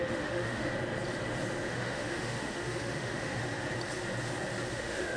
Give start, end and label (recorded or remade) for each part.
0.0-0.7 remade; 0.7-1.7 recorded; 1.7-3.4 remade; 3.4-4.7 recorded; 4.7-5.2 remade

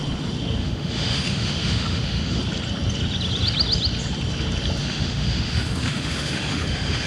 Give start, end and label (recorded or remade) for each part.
0.0-0.6 recorded; 0.6-2.4 remade; 2.4-4.8 recorded; 4.8-7.1 remade

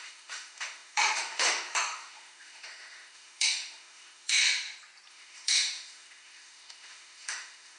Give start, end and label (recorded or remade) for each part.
0.0-4.4 remade; 4.4-5.1 recorded; 5.1-7.8 remade

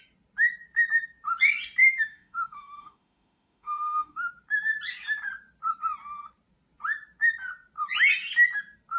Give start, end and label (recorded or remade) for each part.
0.0-1.8 recorded; 1.8-4.3 remade; 4.3-9.0 recorded